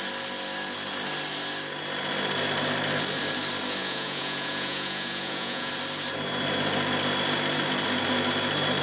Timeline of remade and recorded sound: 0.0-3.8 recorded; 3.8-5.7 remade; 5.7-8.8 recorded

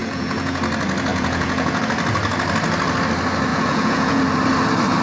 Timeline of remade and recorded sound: 0.0-0.6 remade; 0.6-1.1 recorded; 1.1-1.8 remade; 1.8-3.5 recorded; 3.5-4.2 remade; 4.2-5.0 recorded

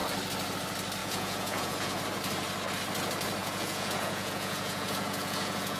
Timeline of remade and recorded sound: 0.0-1.0 recorded; 1.0-2.0 remade; 2.0-3.4 recorded; 3.4-5.8 remade

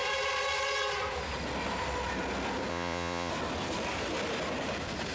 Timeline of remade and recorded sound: 0.0-2.7 recorded; 2.7-3.3 remade; 3.3-5.1 recorded

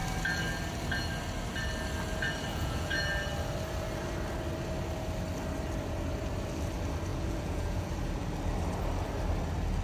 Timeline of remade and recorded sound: 0.0-2.5 recorded; 2.5-3.0 remade; 3.0-7.1 recorded; 7.1-7.9 remade; 7.9-9.8 recorded

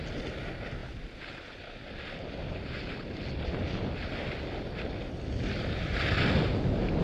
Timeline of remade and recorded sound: 0.0-7.0 recorded

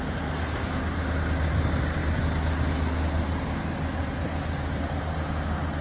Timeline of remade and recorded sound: 0.0-5.8 recorded

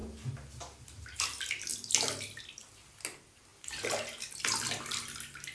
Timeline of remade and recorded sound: 0.0-5.5 recorded